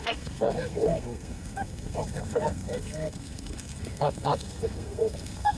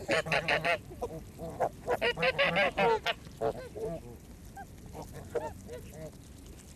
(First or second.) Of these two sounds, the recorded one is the second